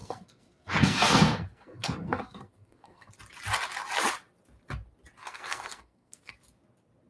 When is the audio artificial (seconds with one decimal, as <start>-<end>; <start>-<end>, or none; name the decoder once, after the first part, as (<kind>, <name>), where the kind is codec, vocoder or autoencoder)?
0.0-3.1 (codec, SNAC); 5.2-6.3